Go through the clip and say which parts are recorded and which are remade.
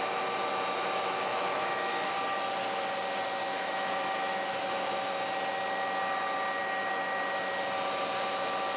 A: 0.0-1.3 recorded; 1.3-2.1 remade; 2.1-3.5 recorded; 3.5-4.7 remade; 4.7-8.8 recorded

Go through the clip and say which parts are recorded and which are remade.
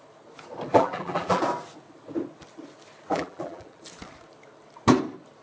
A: 0.0-0.7 recorded; 0.7-1.4 remade; 1.4-3.1 recorded; 3.1-3.8 remade; 3.8-5.4 recorded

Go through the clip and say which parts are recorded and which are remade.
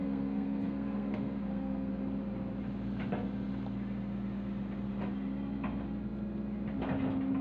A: 0.0-1.9 remade; 1.9-7.4 recorded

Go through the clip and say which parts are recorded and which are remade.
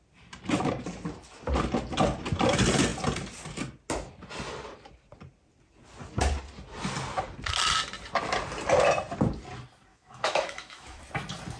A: 0.0-9.9 recorded; 9.9-11.0 remade; 11.0-11.6 recorded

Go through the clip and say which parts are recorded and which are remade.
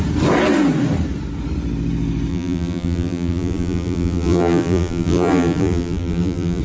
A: 0.0-2.3 recorded; 2.3-6.6 remade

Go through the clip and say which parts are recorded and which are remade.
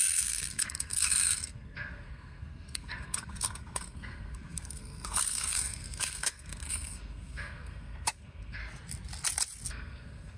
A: 0.0-8.6 remade; 8.6-9.7 recorded; 9.7-10.4 remade